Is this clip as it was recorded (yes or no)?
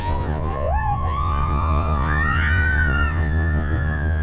no